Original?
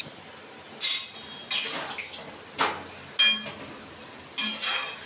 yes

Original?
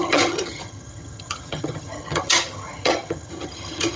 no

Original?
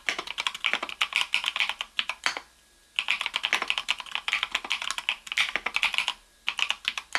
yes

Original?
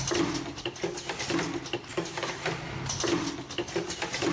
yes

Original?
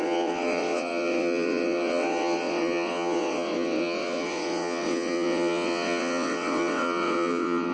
no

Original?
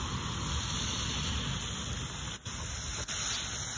yes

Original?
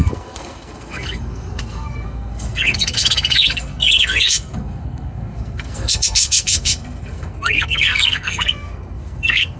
no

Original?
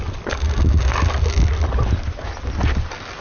yes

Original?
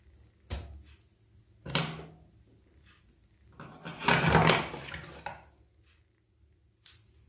yes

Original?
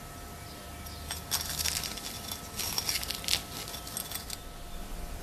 yes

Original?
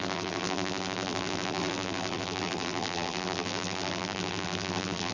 no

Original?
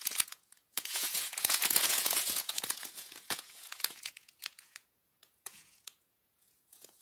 no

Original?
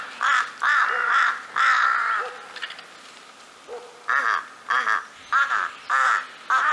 yes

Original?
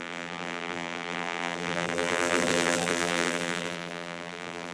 no